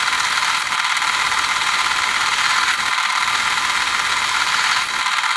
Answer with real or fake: real